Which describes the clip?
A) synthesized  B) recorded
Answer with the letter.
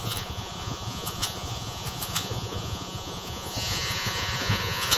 A